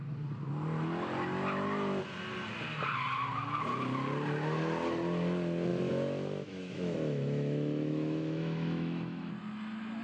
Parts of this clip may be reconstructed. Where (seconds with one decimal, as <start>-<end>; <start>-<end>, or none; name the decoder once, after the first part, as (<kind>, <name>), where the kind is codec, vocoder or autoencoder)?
5.7-9.3 (autoencoder, DAC-VAE)